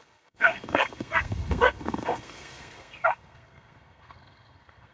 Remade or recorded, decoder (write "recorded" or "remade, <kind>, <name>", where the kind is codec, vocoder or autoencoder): remade, codec, SNAC